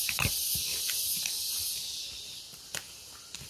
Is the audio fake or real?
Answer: real